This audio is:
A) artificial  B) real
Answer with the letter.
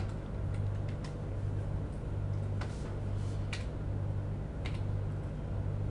B